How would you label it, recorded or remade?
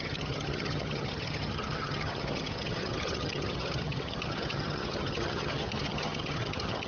remade